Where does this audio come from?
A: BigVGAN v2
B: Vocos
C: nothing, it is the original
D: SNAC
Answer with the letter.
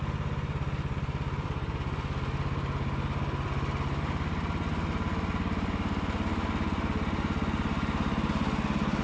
C